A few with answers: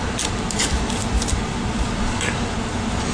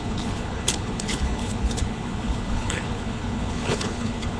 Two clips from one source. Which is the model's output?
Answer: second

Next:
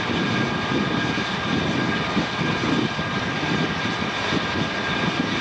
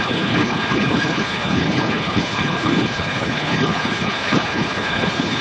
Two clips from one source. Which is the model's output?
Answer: second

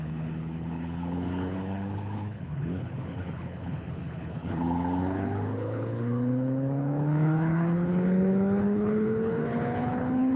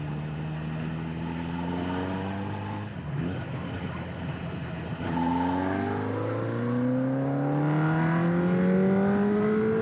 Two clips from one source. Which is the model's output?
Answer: first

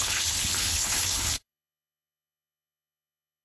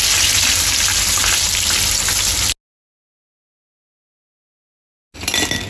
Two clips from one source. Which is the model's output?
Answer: first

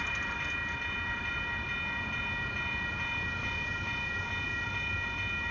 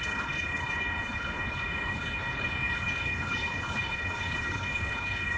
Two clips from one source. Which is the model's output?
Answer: second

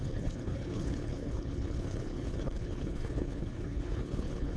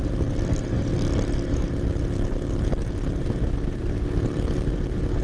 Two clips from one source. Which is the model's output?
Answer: first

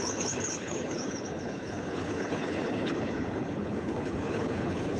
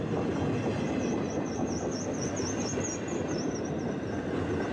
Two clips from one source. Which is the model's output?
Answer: first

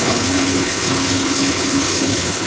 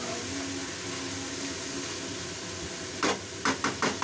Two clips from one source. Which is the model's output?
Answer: first